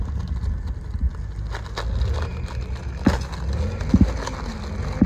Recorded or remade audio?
recorded